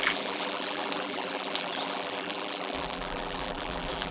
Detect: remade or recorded remade